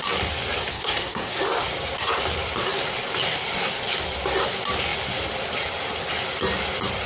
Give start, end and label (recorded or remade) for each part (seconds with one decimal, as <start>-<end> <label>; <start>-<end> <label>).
0.0-0.7 recorded; 0.7-1.4 remade; 1.4-7.1 recorded